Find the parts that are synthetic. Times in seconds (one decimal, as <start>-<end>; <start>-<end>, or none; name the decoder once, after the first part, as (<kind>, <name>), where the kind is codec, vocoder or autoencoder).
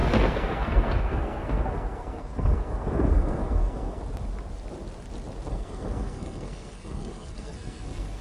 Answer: 0.0-4.0 (codec, SNAC); 5.5-8.2